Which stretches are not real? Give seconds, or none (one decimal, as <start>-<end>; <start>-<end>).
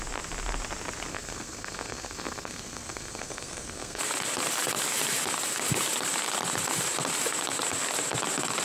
1.1-4.0